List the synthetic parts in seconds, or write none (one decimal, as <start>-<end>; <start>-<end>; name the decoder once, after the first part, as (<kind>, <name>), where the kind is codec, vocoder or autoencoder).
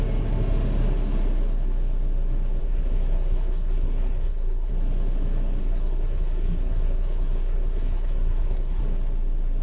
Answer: 2.6-4.7 (codec, SNAC); 5.6-8.8